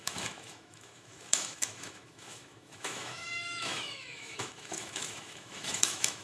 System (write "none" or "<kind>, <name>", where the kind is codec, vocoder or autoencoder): autoencoder, DAC-VAE